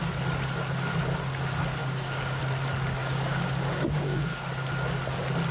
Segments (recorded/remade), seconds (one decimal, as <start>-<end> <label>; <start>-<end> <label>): 0.0-1.8 recorded; 1.8-2.4 remade; 2.4-3.0 recorded; 3.0-4.2 remade; 4.2-5.5 recorded